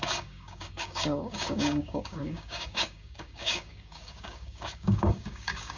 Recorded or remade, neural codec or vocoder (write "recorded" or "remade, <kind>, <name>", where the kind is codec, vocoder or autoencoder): remade, codec, DAC